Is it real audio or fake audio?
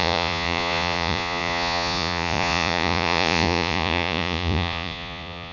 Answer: fake